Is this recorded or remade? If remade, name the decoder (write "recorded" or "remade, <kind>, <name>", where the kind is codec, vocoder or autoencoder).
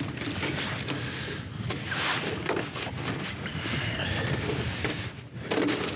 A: recorded